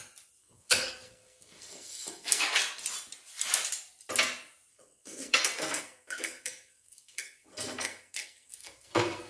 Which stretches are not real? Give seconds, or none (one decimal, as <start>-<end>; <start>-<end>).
0.4-2.6; 4.7-9.3